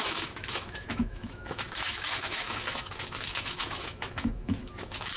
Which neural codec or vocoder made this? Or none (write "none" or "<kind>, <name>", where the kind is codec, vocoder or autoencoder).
autoencoder, DAC-VAE